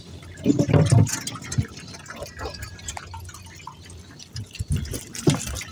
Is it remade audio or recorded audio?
recorded